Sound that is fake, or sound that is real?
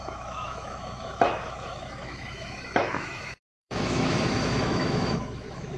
fake